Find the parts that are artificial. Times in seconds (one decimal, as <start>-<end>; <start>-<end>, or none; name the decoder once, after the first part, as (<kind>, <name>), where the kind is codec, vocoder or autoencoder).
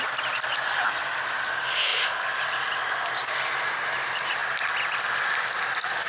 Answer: 1.9-2.8 (vocoder, BigVGAN v2)